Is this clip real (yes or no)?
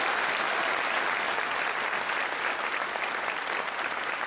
yes